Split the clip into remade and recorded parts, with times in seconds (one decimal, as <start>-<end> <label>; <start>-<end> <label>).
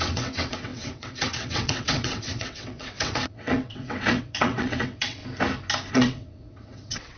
0.0-5.2 remade; 5.2-5.9 recorded; 5.9-7.2 remade